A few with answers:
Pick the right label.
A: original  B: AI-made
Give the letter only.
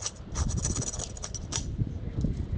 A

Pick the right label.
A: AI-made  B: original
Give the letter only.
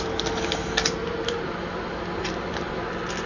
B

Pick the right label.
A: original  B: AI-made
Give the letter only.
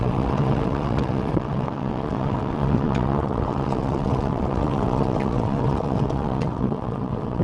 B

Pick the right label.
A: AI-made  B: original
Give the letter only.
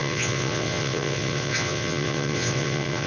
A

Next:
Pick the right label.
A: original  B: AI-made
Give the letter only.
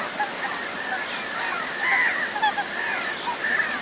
A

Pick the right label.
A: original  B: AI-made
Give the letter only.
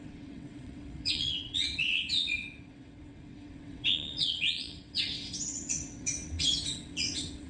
B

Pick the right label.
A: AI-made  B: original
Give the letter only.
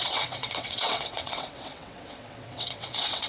A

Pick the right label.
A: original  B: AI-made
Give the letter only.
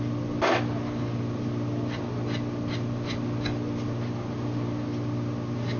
A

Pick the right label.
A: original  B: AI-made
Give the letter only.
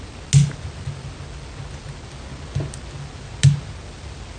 A